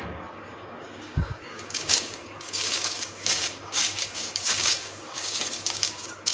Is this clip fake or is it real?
fake